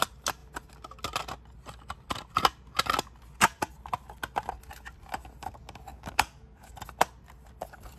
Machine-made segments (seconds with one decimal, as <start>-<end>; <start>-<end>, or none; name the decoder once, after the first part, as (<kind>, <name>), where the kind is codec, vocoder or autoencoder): 5.9-6.7 (codec, DAC)